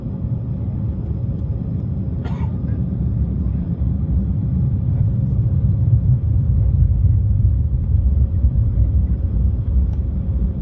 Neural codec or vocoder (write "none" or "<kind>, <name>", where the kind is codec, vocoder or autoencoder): vocoder, BigVGAN v2